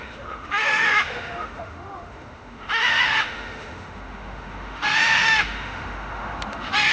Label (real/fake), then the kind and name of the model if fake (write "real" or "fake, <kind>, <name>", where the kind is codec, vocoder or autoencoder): fake, autoencoder, DAC-VAE